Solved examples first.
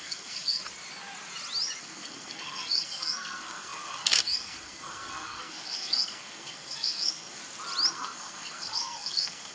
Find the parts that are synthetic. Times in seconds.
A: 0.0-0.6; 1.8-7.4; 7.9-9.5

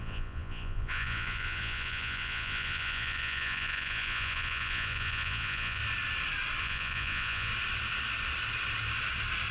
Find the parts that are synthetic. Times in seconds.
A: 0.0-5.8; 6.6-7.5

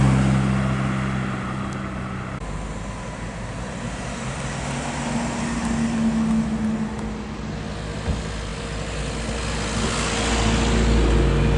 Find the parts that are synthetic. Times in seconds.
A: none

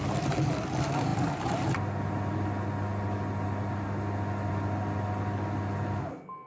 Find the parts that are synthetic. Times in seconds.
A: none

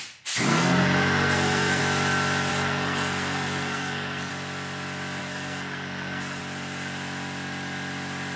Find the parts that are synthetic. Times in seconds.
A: 0.5-1.8; 2.5-4.3; 5.2-6.4

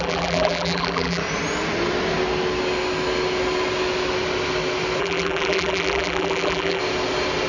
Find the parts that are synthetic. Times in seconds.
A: 0.0-1.2; 5.0-6.8

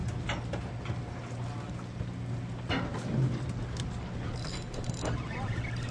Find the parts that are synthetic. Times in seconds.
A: none